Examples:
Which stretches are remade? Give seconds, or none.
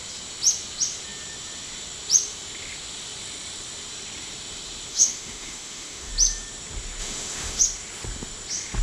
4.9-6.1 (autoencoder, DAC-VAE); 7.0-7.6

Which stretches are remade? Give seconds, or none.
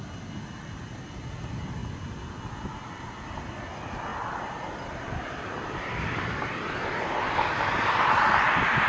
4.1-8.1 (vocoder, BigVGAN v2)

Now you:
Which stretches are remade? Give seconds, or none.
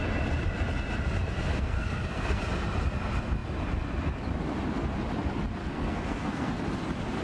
1.5-2.4 (codec, SNAC); 5.6-6.6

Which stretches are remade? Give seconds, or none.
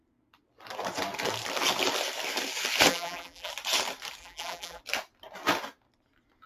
2.9-3.5 (vocoder, BigVGAN v2); 4.2-4.8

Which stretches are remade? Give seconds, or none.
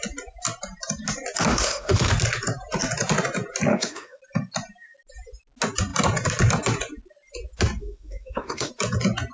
1.5-2.1 (autoencoder, DAC-VAE); 3.7-4.2; 7.8-8.7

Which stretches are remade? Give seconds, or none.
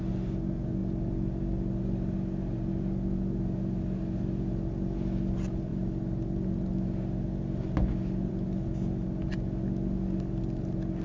none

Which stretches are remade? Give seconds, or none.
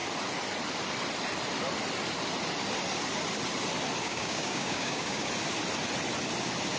4.0-5.3 (codec, DAC)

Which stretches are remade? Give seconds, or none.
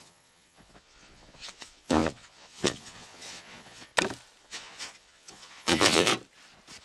0.0-3.9 (vocoder, Vocos); 4.4-6.1